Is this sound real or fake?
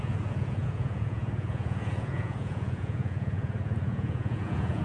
fake